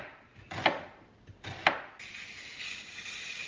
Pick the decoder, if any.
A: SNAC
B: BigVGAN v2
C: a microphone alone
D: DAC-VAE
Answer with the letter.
C